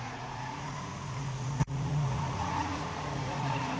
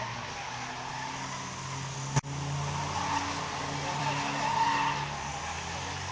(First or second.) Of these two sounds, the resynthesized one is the first